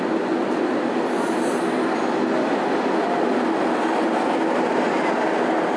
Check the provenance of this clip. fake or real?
real